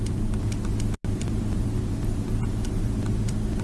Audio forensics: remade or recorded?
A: remade